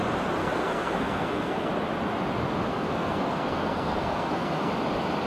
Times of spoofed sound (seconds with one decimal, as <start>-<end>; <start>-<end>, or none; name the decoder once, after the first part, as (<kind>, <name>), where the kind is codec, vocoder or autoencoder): 0.4-1.7 (codec, SNAC); 2.7-4.7